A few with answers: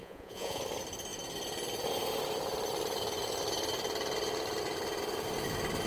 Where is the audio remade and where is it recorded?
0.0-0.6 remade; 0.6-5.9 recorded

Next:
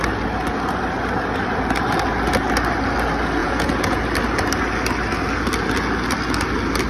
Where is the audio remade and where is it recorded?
0.0-3.4 recorded; 3.4-4.0 remade; 4.0-6.9 recorded